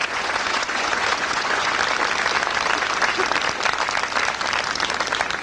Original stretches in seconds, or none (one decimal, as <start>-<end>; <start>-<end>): 1.7-5.4